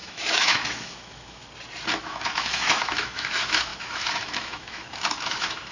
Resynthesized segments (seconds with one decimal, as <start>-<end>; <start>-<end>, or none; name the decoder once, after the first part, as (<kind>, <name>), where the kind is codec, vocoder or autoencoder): 0.0-1.4 (autoencoder, DAC-VAE); 2.0-5.7